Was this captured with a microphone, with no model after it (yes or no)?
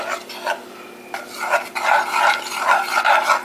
no